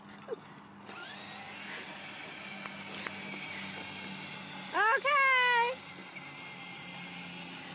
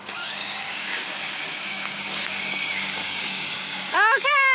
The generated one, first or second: second